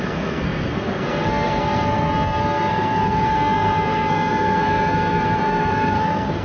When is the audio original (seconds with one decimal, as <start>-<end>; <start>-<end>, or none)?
none